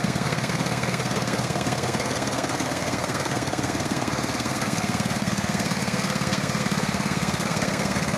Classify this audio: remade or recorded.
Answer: remade